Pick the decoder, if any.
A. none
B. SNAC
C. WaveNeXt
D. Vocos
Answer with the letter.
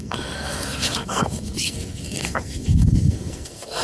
B